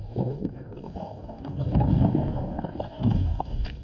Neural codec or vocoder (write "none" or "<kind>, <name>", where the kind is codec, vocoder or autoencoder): codec, DAC